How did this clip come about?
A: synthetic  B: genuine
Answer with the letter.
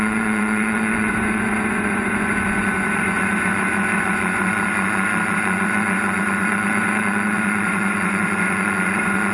A